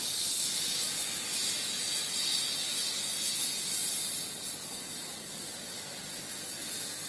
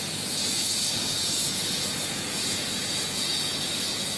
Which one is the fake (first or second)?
second